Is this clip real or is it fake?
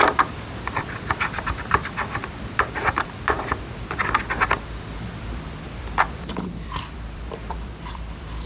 fake